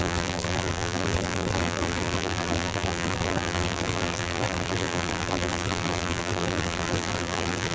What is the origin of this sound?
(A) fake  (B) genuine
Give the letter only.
A